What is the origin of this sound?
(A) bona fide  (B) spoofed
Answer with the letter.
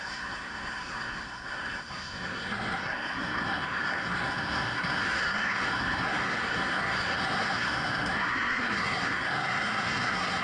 B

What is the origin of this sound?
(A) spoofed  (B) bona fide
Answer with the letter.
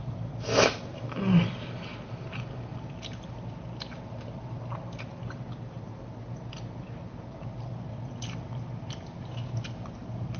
B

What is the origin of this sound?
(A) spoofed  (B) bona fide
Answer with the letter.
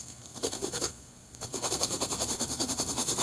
A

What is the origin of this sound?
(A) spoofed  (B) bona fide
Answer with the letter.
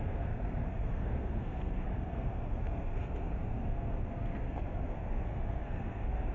A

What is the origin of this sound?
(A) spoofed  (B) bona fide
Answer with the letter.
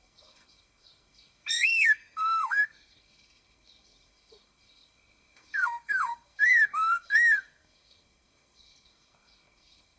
A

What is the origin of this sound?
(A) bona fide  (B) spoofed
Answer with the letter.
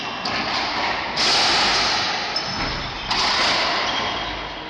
A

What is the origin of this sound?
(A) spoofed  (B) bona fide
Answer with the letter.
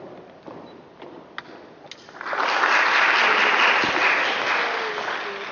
B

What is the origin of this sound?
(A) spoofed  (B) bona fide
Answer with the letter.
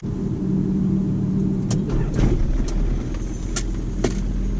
B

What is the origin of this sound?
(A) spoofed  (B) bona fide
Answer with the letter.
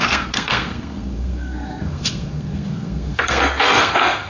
A